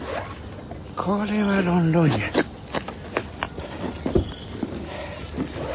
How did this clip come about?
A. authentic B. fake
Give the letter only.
A